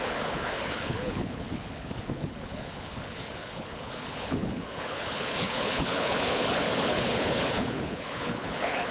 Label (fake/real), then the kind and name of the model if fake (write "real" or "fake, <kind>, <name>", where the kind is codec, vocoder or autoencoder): fake, codec, HILCodec